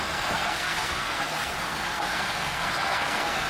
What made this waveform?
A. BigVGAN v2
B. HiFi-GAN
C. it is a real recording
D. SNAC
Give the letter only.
D